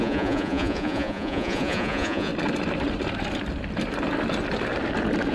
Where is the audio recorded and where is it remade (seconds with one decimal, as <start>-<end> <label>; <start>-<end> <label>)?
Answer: 0.0-2.3 remade; 2.3-5.3 recorded